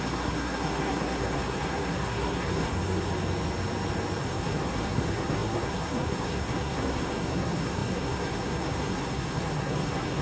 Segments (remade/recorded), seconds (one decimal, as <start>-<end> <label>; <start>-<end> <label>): 0.0-3.1 remade; 3.1-4.2 recorded; 4.2-10.2 remade